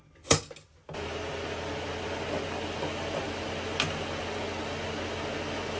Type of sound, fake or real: real